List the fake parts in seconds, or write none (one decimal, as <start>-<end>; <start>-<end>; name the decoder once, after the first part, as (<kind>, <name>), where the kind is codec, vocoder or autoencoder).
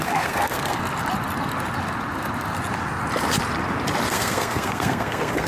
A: 0.0-0.8 (codec, SNAC); 4.1-5.5